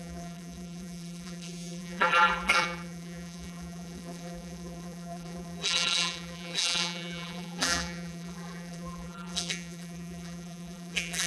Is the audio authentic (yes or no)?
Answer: no